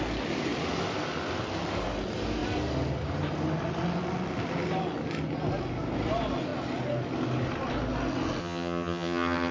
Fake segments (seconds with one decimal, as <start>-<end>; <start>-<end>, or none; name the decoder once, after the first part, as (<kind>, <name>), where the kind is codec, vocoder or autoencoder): 8.4-9.5 (vocoder, HiFi-GAN)